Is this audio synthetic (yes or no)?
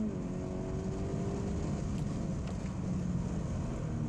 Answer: no